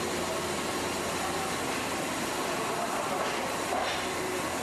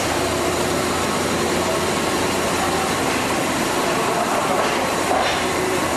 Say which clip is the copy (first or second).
second